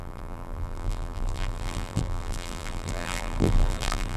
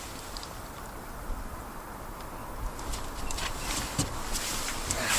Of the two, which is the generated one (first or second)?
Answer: first